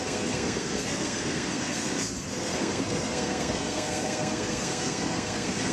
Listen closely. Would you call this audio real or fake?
fake